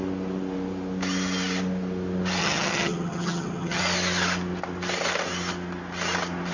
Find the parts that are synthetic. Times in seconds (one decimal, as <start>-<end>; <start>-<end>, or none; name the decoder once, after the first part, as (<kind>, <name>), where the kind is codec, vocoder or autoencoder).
2.4-3.8 (vocoder, HiFi-GAN)